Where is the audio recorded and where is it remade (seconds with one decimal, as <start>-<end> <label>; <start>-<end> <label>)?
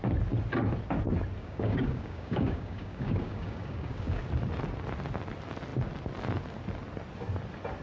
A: 0.0-1.4 recorded; 1.4-4.2 remade; 4.2-7.8 recorded